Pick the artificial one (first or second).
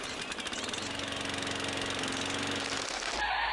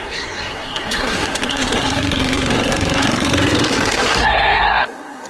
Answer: second